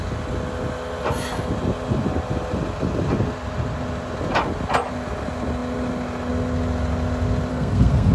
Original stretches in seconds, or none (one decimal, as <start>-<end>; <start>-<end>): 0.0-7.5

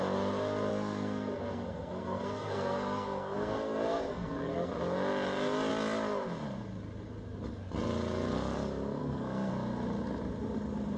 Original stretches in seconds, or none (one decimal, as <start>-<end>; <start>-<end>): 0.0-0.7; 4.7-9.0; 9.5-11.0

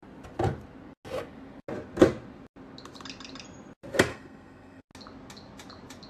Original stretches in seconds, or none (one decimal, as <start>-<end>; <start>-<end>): 0.0-4.1; 4.8-6.1

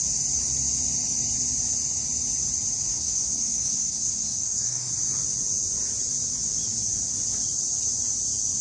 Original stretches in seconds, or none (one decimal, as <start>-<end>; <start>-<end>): 0.0-2.9; 4.9-8.6

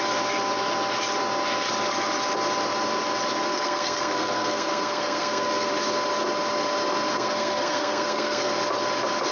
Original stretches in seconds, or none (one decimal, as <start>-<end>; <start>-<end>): 0.0-3.5; 5.7-7.1; 8.5-9.3

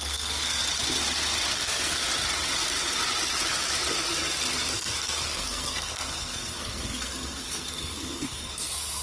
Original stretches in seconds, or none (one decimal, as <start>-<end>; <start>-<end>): 0.6-1.5; 2.0-4.7